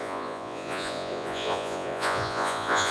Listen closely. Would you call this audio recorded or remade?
remade